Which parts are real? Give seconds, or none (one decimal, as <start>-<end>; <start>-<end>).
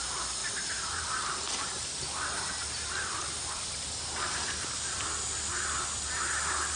0.0-6.8